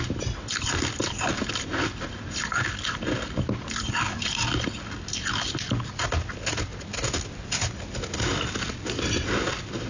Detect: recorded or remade recorded